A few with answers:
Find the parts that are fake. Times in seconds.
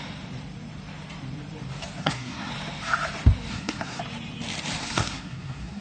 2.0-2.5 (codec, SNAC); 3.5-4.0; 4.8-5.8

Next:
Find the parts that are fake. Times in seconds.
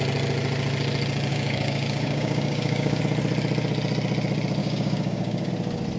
1.3-3.0 (codec, DAC); 4.6-5.5